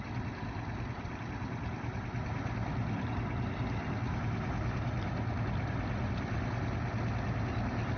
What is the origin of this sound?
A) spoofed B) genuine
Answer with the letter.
B